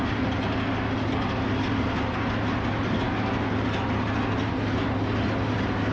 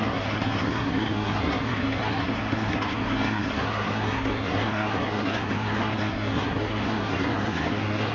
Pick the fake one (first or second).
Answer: second